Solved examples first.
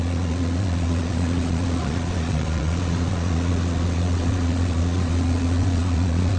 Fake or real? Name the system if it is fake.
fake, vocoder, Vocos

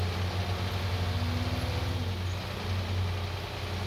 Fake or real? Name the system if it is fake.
real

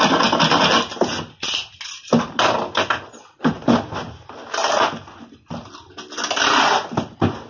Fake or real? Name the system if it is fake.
real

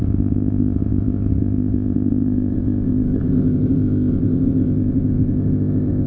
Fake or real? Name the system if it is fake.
fake, codec, ZipCodec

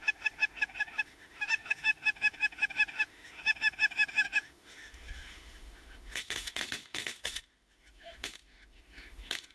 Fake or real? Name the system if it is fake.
fake, autoencoder, DAC-VAE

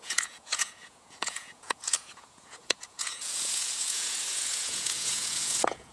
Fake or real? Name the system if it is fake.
fake, vocoder, Vocos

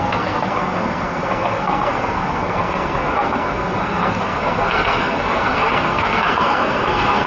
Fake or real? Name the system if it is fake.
fake, codec, SNAC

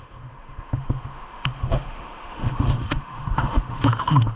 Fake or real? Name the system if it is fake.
fake, autoencoder, DAC-VAE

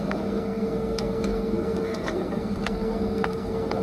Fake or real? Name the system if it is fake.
fake, codec, SNAC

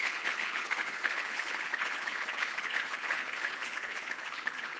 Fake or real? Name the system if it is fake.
fake, codec, HILCodec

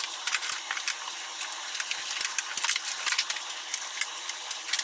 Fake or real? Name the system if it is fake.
real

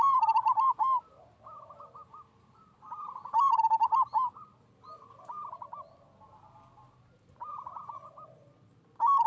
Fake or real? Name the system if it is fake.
real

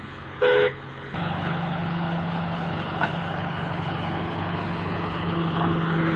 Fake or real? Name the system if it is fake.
fake, codec, HILCodec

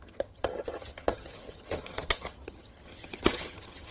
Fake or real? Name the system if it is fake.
fake, vocoder, HiFi-GAN